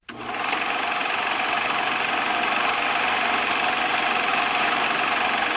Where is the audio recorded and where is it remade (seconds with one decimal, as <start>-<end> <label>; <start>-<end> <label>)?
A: 0.0-4.3 recorded; 4.3-4.8 remade; 4.8-5.6 recorded